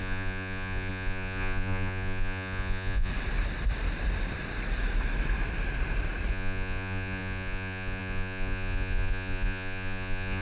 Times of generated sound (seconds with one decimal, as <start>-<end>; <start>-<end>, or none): 0.0-3.1; 6.3-10.4